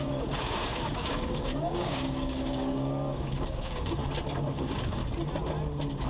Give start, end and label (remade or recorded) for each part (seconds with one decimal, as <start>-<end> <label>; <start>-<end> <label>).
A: 0.0-4.0 remade; 4.0-4.5 recorded; 4.5-5.0 remade; 5.0-6.1 recorded